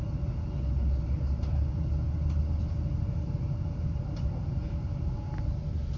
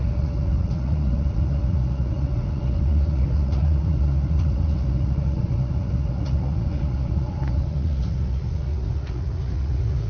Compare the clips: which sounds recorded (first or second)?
first